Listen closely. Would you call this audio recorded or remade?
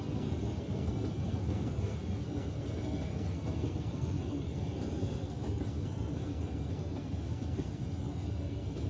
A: remade